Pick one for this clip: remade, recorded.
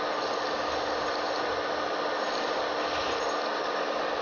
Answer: recorded